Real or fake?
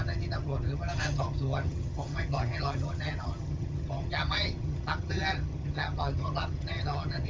fake